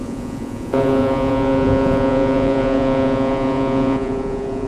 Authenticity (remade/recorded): remade